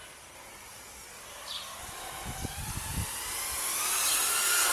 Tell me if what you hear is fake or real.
real